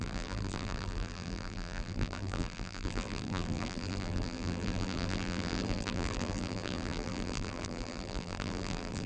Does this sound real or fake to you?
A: fake